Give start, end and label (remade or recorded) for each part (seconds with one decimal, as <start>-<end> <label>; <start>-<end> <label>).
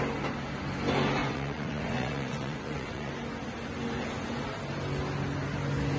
0.0-1.2 recorded; 1.2-3.1 remade; 3.1-6.0 recorded